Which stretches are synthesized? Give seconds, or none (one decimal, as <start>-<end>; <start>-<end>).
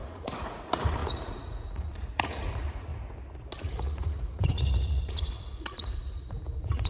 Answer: 0.0-2.9; 3.6-6.9